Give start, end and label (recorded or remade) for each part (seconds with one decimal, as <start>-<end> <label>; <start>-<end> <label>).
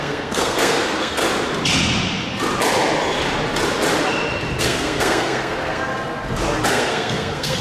0.0-1.2 remade; 1.2-4.6 recorded; 4.6-5.9 remade; 5.9-6.7 recorded; 6.7-7.6 remade